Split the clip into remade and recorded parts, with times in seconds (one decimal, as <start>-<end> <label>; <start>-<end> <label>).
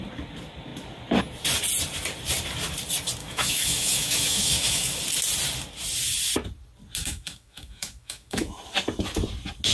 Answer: 0.0-3.2 recorded; 3.2-5.0 remade; 5.0-7.0 recorded; 7.0-8.6 remade; 8.6-9.7 recorded